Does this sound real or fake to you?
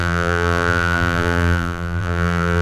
fake